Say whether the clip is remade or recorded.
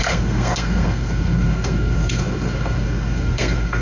remade